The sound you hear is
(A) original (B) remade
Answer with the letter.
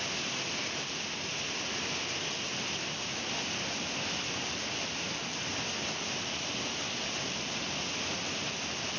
A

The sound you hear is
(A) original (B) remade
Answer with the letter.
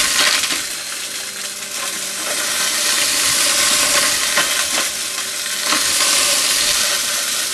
A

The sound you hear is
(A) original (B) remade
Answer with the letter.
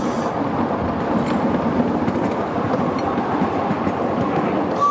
A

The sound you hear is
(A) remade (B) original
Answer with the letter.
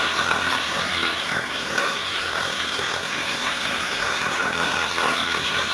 A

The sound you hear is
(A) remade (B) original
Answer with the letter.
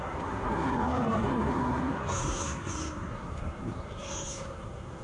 A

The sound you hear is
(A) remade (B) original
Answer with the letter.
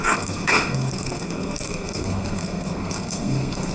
A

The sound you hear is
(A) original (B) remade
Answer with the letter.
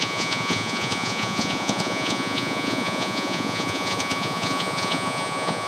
B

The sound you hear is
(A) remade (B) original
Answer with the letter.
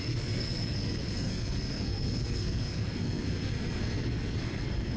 A